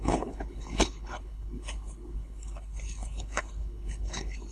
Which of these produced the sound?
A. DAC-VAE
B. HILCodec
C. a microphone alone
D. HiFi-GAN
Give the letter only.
B